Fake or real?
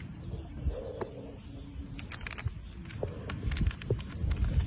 real